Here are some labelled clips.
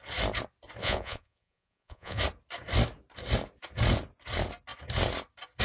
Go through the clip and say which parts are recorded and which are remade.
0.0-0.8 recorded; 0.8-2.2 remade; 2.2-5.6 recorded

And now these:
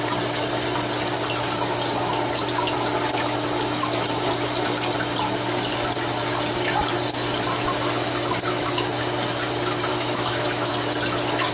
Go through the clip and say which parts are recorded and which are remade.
0.0-9.9 recorded; 9.9-10.7 remade; 10.7-11.5 recorded

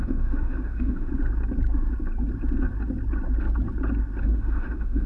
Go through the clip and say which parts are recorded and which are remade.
0.0-1.1 remade; 1.1-4.2 recorded; 4.2-5.1 remade

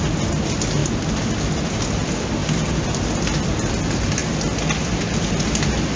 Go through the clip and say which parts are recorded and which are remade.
0.0-6.0 recorded

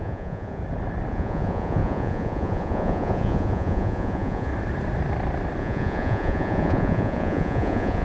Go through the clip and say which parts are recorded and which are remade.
0.0-0.6 remade; 0.6-1.1 recorded; 1.1-4.5 remade; 4.5-5.6 recorded; 5.6-8.0 remade

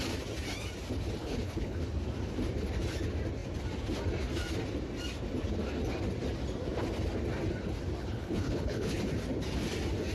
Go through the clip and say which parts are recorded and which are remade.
0.0-1.2 recorded; 1.2-1.8 remade; 1.8-8.0 recorded; 8.0-9.0 remade; 9.0-10.1 recorded

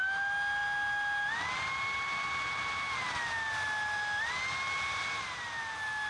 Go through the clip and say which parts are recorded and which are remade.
0.0-6.1 recorded